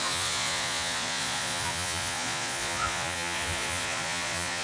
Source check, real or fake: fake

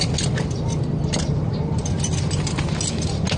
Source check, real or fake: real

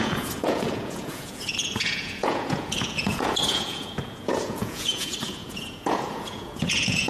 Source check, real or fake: fake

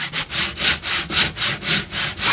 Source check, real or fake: real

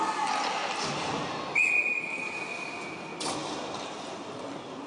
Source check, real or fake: real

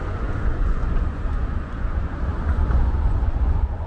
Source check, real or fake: fake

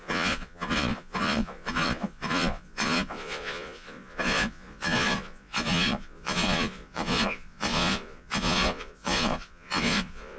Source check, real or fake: fake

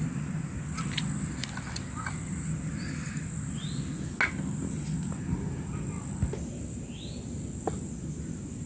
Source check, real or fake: real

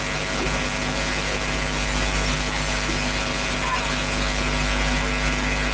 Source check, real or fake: real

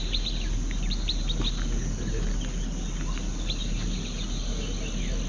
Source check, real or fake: real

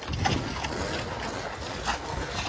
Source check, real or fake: real